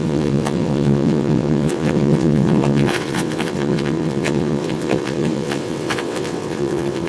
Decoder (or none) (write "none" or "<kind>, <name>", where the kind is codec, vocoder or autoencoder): vocoder, WaveNeXt